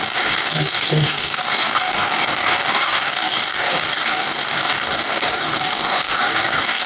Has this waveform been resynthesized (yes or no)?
yes